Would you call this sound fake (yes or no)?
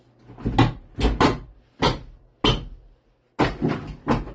no